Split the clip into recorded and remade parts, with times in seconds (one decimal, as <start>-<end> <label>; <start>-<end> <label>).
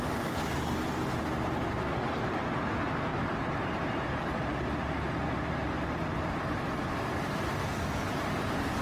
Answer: 0.0-3.1 recorded; 3.1-4.9 remade; 4.9-5.6 recorded; 5.6-7.5 remade; 7.5-8.8 recorded